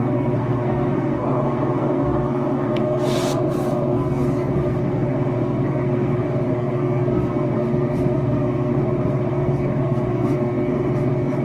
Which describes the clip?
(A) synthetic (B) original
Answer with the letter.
A